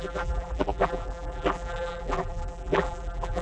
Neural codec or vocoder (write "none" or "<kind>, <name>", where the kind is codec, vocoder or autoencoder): vocoder, BigVGAN v2